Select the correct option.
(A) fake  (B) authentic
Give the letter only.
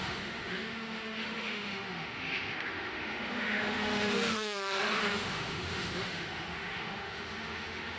A